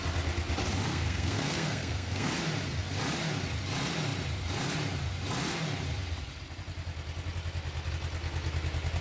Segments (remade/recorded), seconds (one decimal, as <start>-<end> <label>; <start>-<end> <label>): 0.0-0.9 recorded; 0.9-2.3 remade; 2.3-9.0 recorded